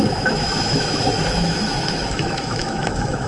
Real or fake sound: fake